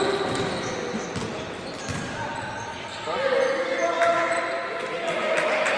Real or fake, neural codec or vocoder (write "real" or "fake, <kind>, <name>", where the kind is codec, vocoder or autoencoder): real